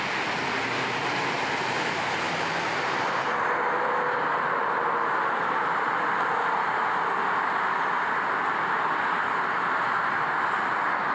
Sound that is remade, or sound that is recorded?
recorded